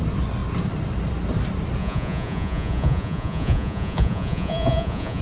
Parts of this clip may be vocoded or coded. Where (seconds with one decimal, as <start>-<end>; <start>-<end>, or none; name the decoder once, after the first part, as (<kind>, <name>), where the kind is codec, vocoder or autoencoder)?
1.8-5.2 (vocoder, Vocos)